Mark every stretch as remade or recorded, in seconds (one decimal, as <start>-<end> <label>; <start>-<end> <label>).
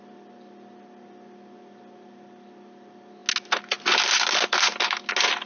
0.0-5.5 recorded